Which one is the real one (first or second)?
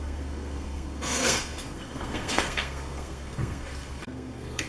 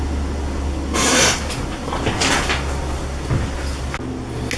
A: second